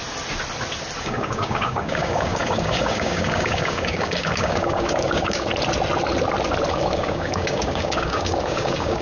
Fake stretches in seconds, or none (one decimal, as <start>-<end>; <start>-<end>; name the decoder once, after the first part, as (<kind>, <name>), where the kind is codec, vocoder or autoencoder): 1.0-5.5 (codec, DAC); 6.7-9.0

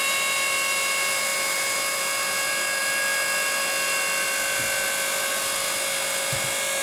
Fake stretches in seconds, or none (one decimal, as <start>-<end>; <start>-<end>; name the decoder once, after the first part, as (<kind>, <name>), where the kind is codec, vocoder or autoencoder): none

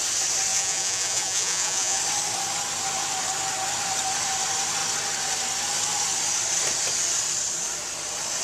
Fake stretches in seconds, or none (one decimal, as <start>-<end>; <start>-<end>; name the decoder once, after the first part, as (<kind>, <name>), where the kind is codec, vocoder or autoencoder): 0.5-2.0 (vocoder, Vocos)

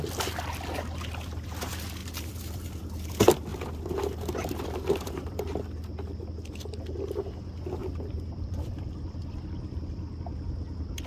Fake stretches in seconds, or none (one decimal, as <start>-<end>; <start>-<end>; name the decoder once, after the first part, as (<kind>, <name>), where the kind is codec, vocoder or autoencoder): 2.0-3.1 (vocoder, BigVGAN v2); 3.5-5.6; 7.8-9.1

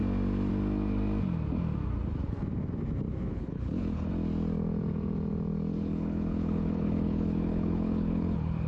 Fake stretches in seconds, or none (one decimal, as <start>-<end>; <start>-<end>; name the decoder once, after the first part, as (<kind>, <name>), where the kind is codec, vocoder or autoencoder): 3.3-4.1 (codec, HILCodec); 5.7-8.7

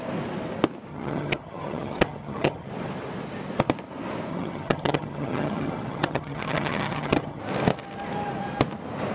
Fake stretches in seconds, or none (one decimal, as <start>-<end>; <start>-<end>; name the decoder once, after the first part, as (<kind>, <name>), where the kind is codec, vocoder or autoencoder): 0.9-2.7 (vocoder, HiFi-GAN); 4.3-7.4